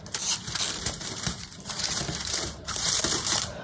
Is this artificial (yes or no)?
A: yes